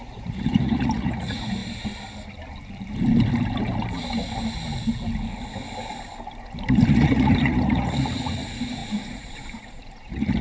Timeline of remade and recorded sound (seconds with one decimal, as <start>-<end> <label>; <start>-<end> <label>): 0.0-1.6 remade; 1.6-6.7 recorded; 6.7-10.4 remade